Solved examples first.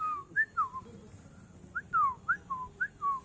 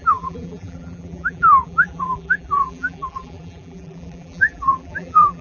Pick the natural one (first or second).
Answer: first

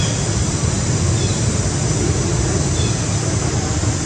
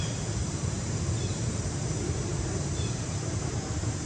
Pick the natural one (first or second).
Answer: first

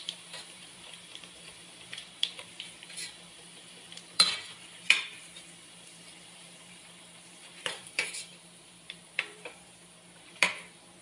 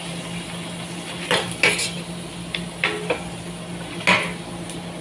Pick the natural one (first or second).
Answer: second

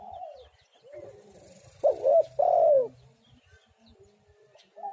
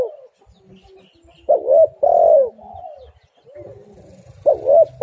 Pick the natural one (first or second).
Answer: second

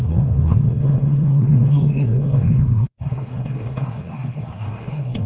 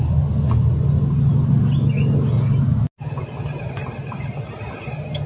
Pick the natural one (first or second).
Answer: second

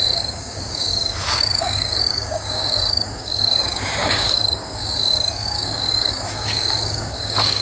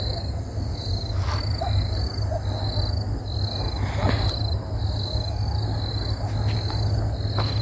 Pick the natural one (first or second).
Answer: second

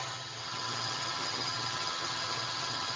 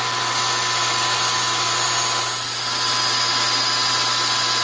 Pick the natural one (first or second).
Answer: second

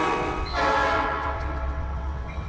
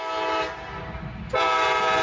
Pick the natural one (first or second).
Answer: second